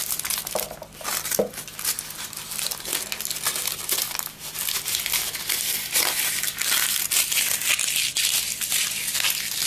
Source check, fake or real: real